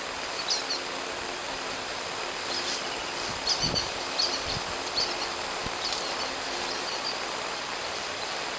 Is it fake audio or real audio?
real